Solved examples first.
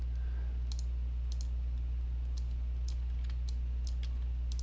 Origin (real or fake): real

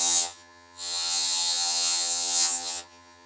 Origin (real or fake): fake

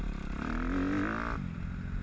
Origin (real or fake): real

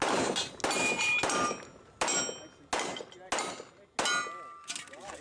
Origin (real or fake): real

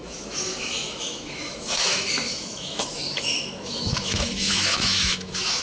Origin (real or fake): fake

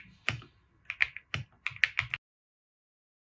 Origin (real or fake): real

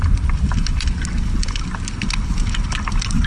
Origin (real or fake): real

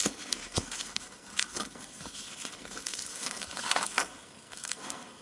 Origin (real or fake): fake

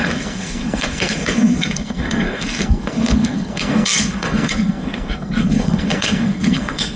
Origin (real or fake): fake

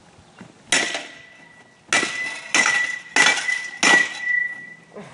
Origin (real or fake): real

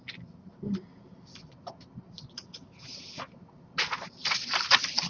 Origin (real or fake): real